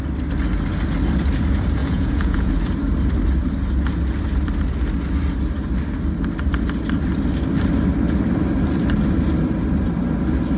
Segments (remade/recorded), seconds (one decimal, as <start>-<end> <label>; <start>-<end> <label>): 0.0-1.8 recorded; 1.8-2.5 remade; 2.5-10.6 recorded